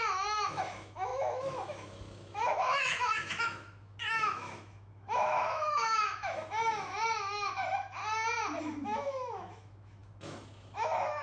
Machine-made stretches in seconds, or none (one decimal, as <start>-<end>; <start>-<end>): 0.0-8.0; 8.6-11.2